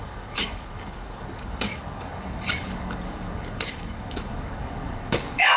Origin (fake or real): fake